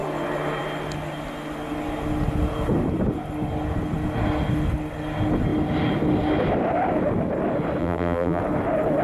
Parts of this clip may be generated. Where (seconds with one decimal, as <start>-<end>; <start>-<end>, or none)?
7.8-8.4